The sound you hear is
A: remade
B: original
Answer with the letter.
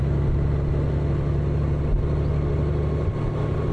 B